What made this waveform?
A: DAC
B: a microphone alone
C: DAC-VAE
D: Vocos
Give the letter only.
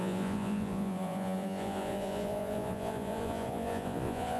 D